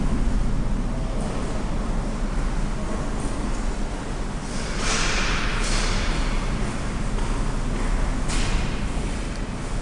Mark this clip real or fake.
real